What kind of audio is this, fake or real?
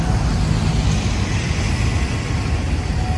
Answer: real